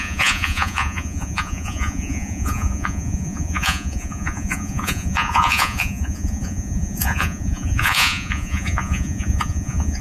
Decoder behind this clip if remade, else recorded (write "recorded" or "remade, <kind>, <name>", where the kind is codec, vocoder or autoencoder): remade, vocoder, Vocos